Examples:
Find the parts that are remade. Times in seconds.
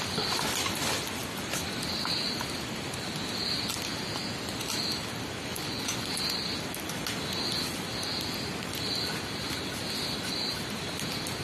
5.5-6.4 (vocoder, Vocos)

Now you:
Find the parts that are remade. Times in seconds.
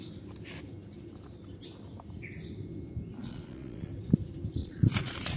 3.2-3.9 (vocoder, Vocos); 4.6-5.4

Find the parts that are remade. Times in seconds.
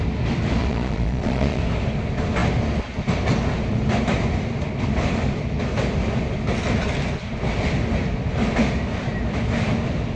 0.6-1.6 (vocoder, Vocos)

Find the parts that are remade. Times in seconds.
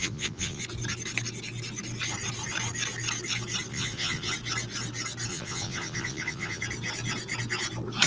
0.0-0.6 (vocoder, Vocos); 3.7-4.3; 5.3-6.6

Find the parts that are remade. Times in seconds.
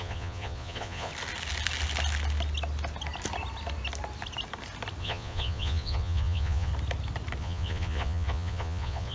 0.0-1.1 (vocoder, Vocos); 5.0-6.7; 7.4-9.1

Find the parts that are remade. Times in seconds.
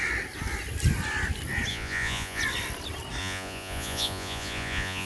1.7-2.4 (vocoder, Vocos); 3.2-5.1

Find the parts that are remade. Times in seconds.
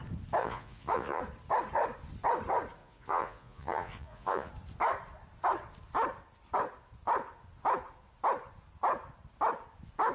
0.4-1.2 (vocoder, Vocos); 2.8-4.5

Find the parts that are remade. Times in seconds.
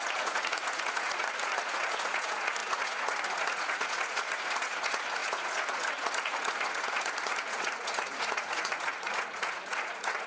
0.0-10.3 (vocoder, Vocos)